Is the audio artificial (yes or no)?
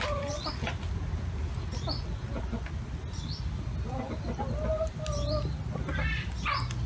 no